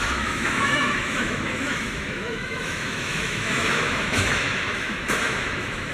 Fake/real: fake